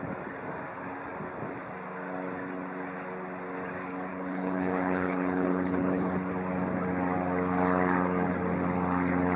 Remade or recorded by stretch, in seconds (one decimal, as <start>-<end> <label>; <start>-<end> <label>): 0.0-4.1 recorded; 4.1-6.3 remade; 6.3-9.4 recorded